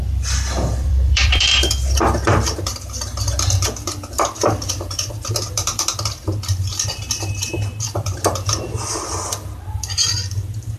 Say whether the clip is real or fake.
fake